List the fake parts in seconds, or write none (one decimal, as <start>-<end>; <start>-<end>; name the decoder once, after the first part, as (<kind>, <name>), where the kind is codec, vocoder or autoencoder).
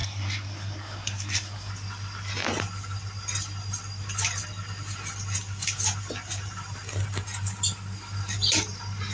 0.0-1.7 (codec, SNAC)